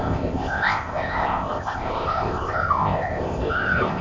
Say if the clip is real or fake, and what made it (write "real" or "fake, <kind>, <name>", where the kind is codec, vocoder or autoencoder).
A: fake, codec, ZipCodec